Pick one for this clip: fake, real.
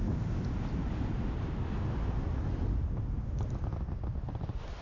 real